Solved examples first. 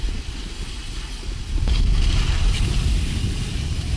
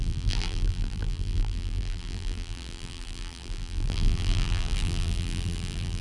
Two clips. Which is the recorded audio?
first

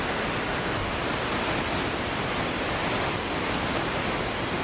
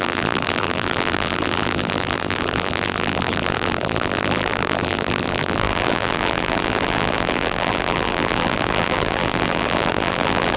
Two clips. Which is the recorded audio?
first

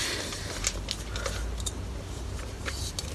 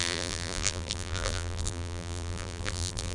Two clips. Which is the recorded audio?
first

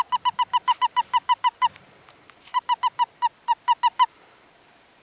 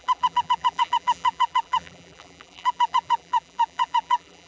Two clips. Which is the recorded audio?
first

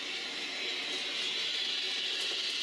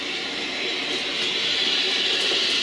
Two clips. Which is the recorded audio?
first